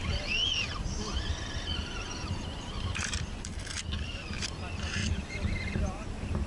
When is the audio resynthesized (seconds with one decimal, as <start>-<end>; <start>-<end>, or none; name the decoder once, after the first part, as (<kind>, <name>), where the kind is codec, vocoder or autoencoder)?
0.7-3.8 (vocoder, BigVGAN v2); 5.0-6.5